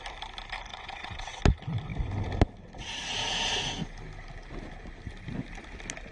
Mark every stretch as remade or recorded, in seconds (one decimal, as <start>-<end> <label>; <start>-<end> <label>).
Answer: 0.0-0.7 recorded; 0.7-1.4 remade; 1.4-6.1 recorded